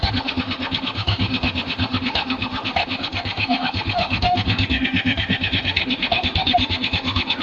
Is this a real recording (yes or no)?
no